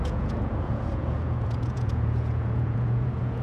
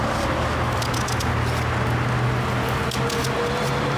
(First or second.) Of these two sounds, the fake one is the first